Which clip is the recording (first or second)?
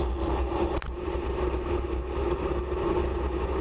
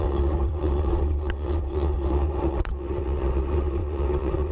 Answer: first